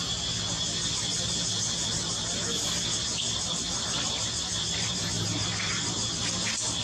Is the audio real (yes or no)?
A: yes